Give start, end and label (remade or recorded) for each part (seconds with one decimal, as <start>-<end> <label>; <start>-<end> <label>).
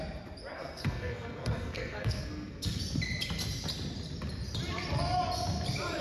0.0-0.5 recorded; 0.5-2.8 remade; 2.8-6.0 recorded